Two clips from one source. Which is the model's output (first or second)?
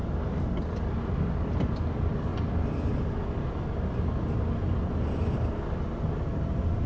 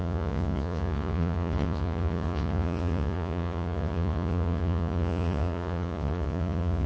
second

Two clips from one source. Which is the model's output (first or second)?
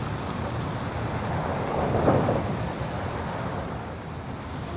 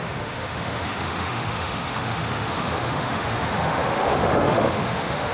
second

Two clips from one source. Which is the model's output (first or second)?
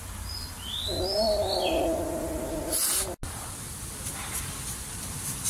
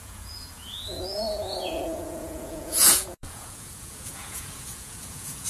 second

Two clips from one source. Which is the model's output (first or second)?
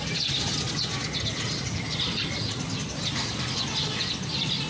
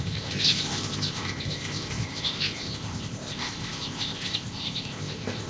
second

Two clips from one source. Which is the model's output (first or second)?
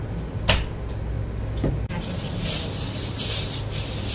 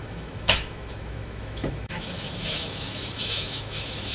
second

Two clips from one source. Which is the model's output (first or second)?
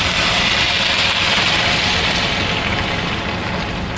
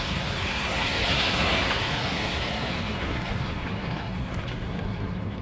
second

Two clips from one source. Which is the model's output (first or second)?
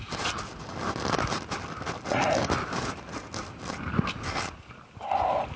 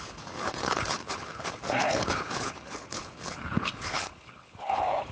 second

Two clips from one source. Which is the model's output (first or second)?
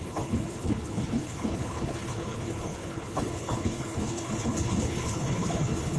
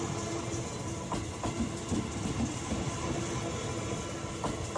first